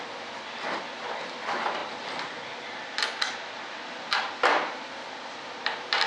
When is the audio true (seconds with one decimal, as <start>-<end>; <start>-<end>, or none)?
0.0-6.1

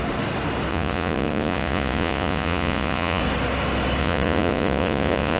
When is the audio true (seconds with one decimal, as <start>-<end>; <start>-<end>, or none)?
0.0-0.7; 3.2-4.0

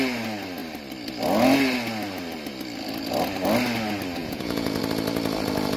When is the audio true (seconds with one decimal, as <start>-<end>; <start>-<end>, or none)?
0.0-4.2; 4.8-5.8

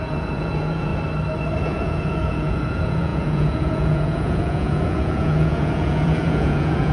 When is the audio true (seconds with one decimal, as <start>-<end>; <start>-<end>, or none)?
0.9-1.6

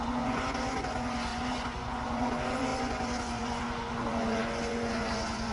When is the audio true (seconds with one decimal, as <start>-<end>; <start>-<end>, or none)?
none

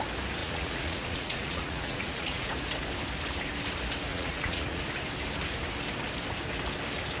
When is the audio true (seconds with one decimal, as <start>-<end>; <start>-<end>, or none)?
0.0-0.4; 2.5-4.1; 4.8-7.2

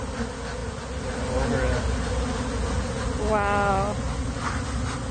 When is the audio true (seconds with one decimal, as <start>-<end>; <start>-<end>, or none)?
0.0-5.1